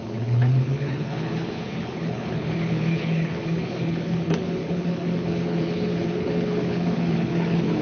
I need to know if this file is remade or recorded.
remade